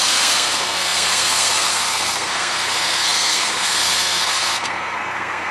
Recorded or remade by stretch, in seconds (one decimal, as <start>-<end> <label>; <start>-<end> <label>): 0.0-5.5 remade